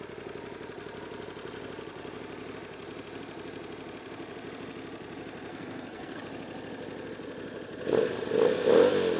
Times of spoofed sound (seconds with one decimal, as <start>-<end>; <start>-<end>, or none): 5.5-6.2

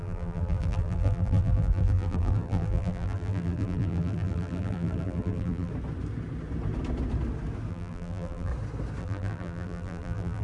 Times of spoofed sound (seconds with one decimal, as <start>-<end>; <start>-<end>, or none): 0.0-5.7; 7.7-8.5; 9.0-10.4

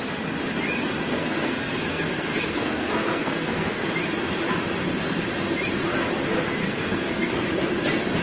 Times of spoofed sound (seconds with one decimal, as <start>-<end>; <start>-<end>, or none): 1.1-3.9; 6.6-7.5

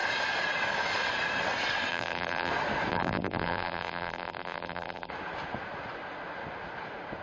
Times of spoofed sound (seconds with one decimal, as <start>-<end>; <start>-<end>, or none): 1.9-2.5; 2.9-5.1